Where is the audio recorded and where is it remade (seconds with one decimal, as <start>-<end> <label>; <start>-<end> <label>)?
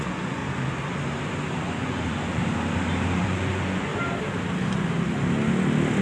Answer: 0.0-0.4 remade; 0.4-1.5 recorded; 1.5-2.4 remade; 2.4-3.2 recorded; 3.2-3.9 remade; 3.9-6.0 recorded